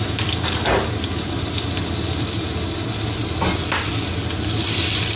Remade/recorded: recorded